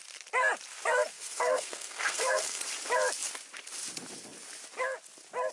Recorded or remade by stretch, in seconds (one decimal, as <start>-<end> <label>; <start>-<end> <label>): 0.0-1.1 recorded; 1.1-2.6 remade; 2.6-5.5 recorded